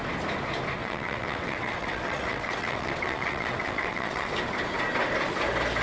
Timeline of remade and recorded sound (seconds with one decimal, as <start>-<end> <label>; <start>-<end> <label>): 0.0-0.8 recorded; 0.8-4.3 remade; 4.3-5.8 recorded